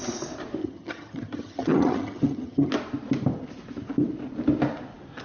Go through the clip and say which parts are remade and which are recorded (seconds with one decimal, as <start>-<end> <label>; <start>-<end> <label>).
0.0-0.6 recorded; 0.6-2.7 remade; 2.7-5.2 recorded